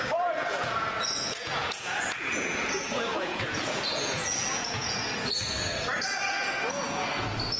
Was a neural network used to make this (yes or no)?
yes